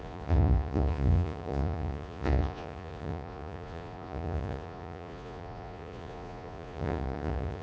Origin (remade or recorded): remade